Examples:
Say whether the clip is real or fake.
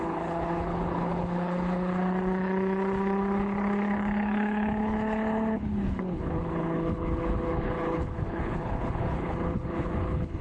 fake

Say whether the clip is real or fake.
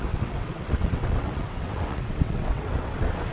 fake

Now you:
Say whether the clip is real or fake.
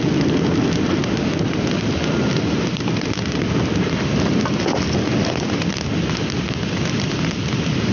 real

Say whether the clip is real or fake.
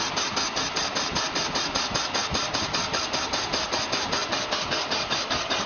real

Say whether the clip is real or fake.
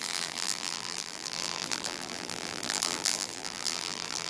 fake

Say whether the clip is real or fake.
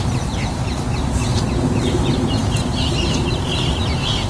real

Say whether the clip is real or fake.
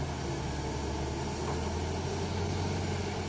real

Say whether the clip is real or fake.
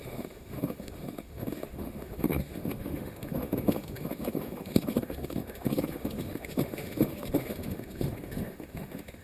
fake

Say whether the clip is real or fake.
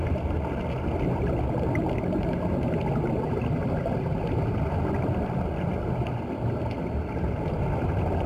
real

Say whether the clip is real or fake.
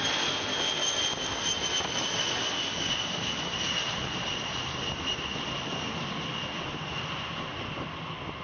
real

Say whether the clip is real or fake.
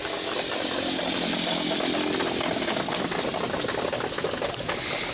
real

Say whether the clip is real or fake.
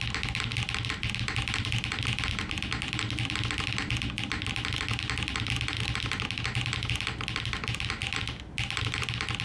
real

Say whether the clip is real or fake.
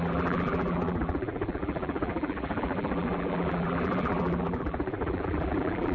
fake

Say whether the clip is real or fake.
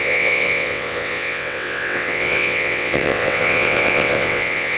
fake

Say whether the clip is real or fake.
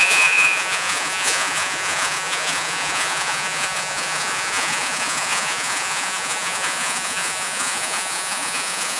fake